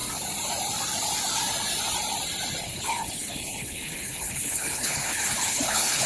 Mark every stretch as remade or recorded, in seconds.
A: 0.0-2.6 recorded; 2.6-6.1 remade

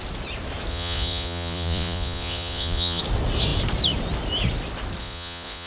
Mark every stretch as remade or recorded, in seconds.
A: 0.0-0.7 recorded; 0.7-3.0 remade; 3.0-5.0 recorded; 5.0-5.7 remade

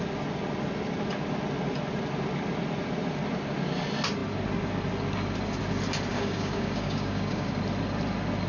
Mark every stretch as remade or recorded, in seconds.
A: 0.0-6.1 recorded; 6.1-7.5 remade; 7.5-8.5 recorded

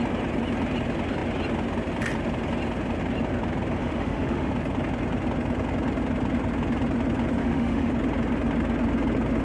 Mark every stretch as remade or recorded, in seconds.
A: 0.0-3.8 recorded; 3.8-4.5 remade; 4.5-7.4 recorded; 7.4-7.9 remade; 7.9-9.4 recorded

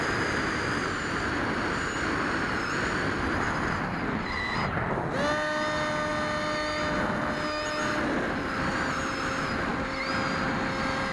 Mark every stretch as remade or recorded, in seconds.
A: 0.0-11.1 recorded

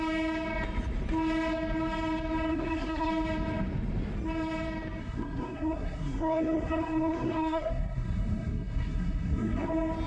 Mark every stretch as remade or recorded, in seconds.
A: 0.0-2.5 recorded; 2.5-3.1 remade; 3.1-5.0 recorded; 5.0-9.7 remade; 9.7-10.1 recorded

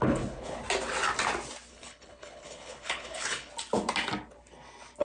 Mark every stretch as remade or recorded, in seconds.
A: 0.0-0.6 remade; 0.6-1.7 recorded; 1.7-3.5 remade; 3.5-5.0 recorded

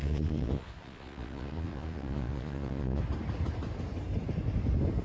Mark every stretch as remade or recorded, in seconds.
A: 0.0-3.0 remade; 3.0-5.0 recorded